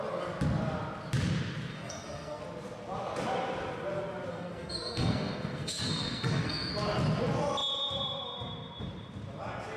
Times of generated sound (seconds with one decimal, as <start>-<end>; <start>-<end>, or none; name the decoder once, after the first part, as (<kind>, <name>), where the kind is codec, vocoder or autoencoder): 1.7-2.4 (codec, SNAC); 4.3-6.7